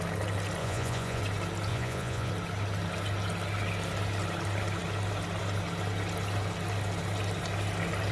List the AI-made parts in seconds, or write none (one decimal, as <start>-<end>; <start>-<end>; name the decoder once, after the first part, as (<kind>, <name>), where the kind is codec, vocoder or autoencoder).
0.6-1.2 (vocoder, Vocos); 1.7-2.3